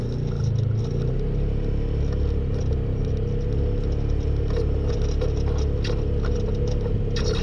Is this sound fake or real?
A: real